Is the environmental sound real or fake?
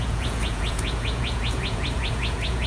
fake